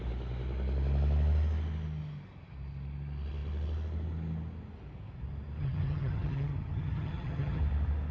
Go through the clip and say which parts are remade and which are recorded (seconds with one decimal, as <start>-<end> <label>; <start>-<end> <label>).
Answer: 0.0-5.6 recorded; 5.6-7.6 remade; 7.6-8.1 recorded